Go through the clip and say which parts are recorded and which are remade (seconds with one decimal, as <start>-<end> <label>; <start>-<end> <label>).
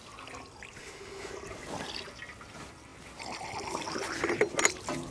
0.0-0.8 recorded; 0.8-1.3 remade; 1.3-5.1 recorded